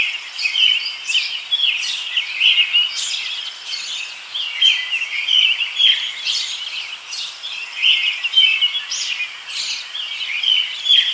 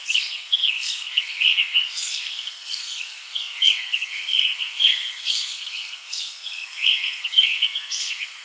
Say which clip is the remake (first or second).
second